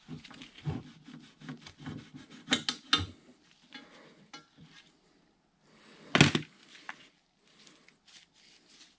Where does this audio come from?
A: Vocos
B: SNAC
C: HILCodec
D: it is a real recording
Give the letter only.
D